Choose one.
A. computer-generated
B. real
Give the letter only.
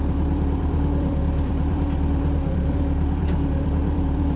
A